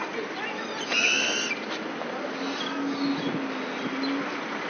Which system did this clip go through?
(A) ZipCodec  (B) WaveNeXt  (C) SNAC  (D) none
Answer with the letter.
D